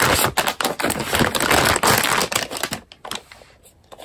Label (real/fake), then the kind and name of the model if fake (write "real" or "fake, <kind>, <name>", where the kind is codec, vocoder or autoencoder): real